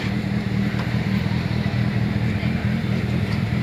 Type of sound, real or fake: fake